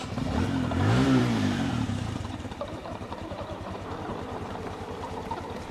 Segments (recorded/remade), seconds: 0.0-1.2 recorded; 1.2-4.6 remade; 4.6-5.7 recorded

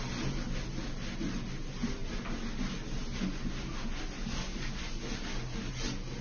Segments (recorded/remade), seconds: 0.0-6.2 recorded

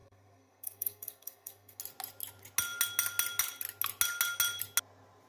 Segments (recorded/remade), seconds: 0.0-1.8 remade; 1.8-5.3 recorded

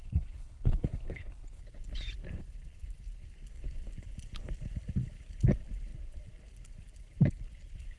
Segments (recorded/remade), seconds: 0.0-1.6 remade; 1.6-8.0 recorded

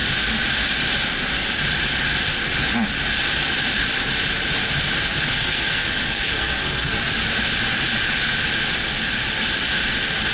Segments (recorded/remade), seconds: 0.0-5.3 recorded; 5.3-7.1 remade; 7.1-10.3 recorded

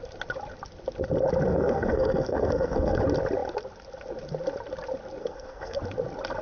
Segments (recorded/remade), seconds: 0.0-1.5 recorded; 1.5-3.0 remade; 3.0-5.2 recorded; 5.2-5.8 remade; 5.8-6.4 recorded